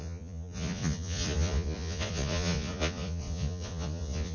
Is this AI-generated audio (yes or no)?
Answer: yes